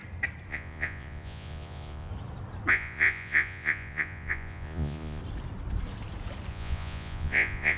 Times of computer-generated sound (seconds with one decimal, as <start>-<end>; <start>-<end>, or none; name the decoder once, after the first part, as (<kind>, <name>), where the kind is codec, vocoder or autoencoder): 0.5-2.1 (vocoder, Vocos); 2.7-5.2; 6.5-7.8